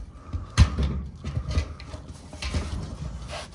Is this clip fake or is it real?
real